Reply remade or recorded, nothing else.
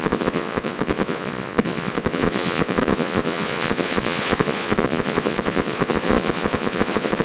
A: remade